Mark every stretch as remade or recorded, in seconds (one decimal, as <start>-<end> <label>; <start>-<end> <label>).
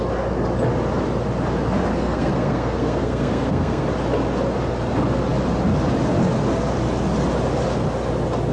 0.0-1.9 recorded; 1.9-3.9 remade; 3.9-8.5 recorded